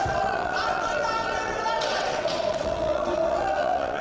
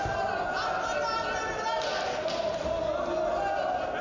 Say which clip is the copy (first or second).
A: first